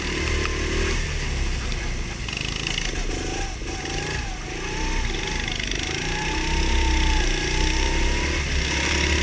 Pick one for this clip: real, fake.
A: real